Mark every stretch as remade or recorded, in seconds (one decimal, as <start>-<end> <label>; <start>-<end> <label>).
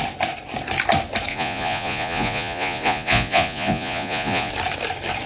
0.0-1.3 recorded; 1.3-4.5 remade; 4.5-5.3 recorded